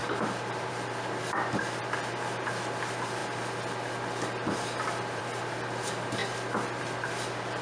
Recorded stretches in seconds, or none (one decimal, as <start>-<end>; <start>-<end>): 0.0-7.6